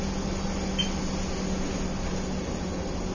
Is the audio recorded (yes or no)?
yes